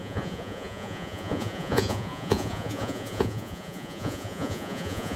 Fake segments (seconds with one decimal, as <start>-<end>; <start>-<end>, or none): 0.0-5.2